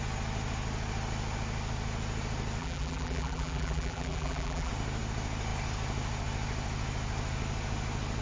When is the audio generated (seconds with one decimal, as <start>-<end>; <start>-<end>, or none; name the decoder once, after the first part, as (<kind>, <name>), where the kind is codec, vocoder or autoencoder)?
2.6-4.7 (vocoder, BigVGAN v2)